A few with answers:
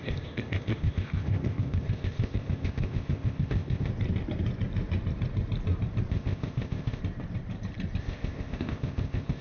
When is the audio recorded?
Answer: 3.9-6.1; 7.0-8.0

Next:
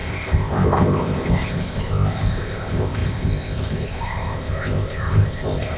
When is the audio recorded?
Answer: none